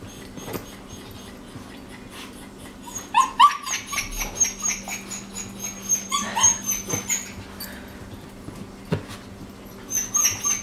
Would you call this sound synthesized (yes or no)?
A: no